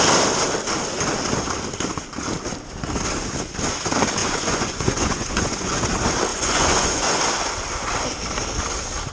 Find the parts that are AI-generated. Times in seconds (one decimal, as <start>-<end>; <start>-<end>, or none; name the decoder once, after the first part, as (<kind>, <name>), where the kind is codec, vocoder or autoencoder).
4.2-5.8 (vocoder, Vocos); 6.3-7.2